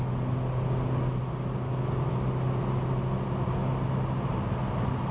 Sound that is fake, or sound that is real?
real